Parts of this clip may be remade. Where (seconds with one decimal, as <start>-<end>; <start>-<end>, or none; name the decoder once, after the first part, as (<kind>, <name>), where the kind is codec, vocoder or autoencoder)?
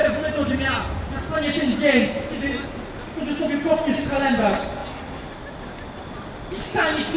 none